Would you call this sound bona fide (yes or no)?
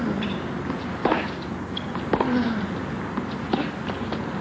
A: yes